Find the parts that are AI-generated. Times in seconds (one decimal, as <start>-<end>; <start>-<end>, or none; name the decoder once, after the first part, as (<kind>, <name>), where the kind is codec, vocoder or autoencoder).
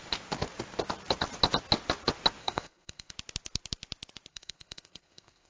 2.4-3.1 (codec, SNAC); 4.3-5.5